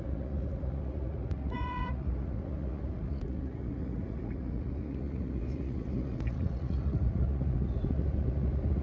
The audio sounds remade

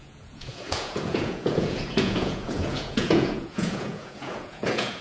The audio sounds remade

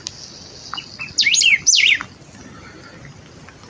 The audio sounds recorded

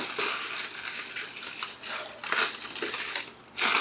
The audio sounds recorded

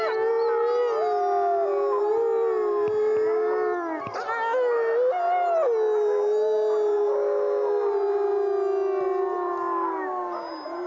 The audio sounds recorded